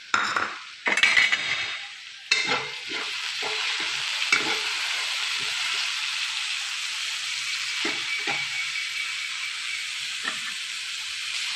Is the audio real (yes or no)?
no